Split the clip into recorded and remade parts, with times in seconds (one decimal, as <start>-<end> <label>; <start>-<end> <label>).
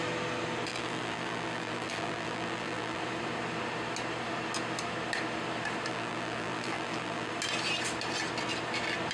0.0-0.7 recorded; 0.7-3.0 remade; 3.0-5.9 recorded; 5.9-7.3 remade; 7.3-9.1 recorded